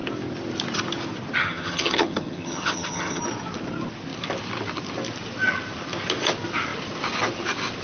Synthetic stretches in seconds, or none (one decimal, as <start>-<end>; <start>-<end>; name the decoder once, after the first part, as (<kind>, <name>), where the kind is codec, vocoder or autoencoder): 1.4-3.2 (vocoder, HiFi-GAN)